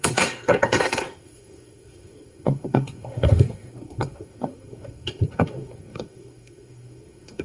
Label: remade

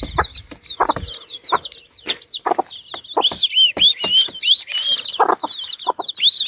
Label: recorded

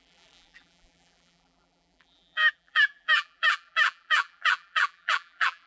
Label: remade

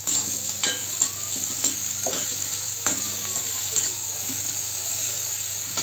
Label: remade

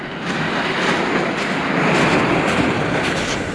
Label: recorded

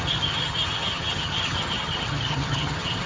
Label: remade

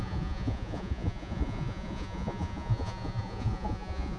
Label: remade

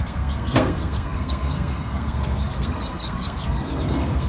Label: remade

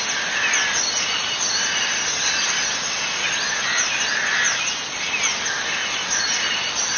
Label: recorded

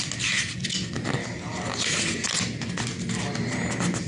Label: recorded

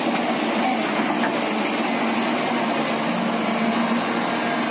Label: recorded